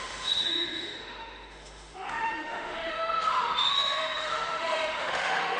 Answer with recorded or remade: remade